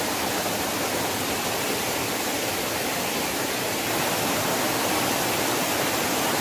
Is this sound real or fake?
real